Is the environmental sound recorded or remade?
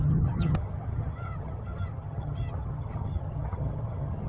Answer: remade